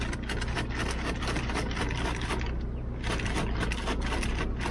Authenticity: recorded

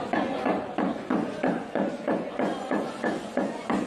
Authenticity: remade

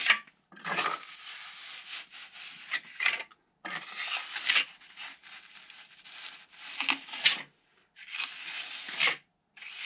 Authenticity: recorded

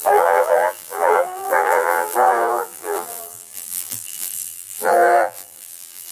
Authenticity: remade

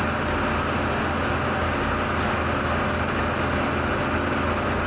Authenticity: recorded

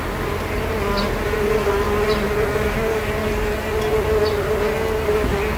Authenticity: recorded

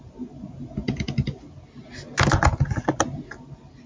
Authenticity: recorded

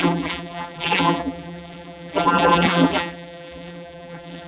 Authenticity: remade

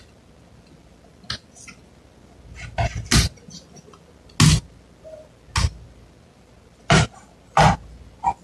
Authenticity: recorded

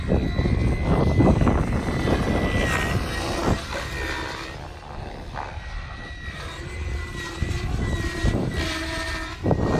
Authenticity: recorded